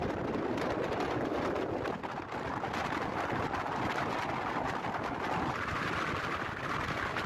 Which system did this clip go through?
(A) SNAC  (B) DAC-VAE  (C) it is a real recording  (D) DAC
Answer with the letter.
C